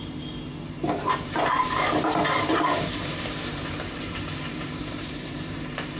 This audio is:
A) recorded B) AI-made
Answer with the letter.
B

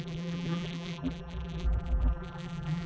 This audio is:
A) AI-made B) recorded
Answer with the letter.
A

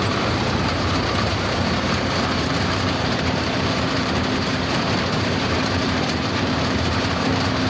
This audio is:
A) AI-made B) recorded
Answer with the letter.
A